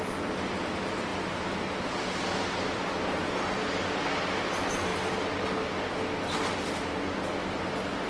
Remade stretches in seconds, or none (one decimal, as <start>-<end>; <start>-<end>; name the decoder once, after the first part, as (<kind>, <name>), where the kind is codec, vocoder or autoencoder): none